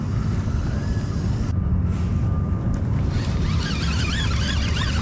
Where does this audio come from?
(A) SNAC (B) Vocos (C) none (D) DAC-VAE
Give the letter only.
C